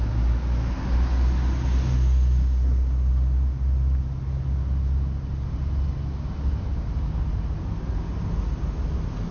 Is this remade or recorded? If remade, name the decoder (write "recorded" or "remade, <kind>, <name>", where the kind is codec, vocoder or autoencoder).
recorded